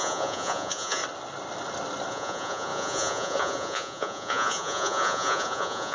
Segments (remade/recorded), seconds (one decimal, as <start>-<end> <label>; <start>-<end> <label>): 0.0-1.0 remade; 1.0-2.1 recorded; 2.1-5.9 remade